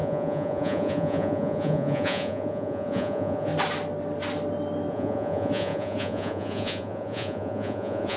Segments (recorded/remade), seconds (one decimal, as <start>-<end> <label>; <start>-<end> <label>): 0.0-3.5 remade; 3.5-4.9 recorded; 4.9-8.2 remade